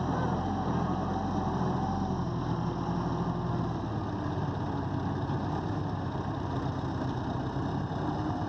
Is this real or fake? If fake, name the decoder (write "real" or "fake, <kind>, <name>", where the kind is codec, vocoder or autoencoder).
real